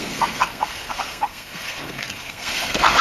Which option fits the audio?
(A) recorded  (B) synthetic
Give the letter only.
B